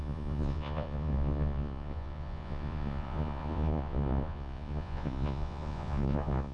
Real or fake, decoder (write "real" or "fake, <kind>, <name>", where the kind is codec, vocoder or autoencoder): fake, vocoder, Vocos